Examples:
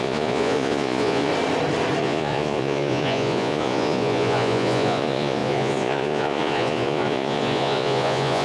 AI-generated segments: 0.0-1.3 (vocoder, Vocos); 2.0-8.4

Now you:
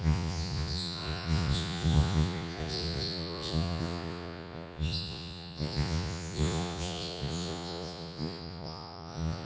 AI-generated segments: 0.0-9.4 (vocoder, Vocos)